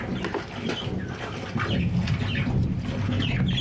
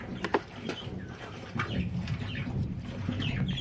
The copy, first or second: second